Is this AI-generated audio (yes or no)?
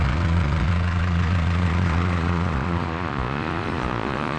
yes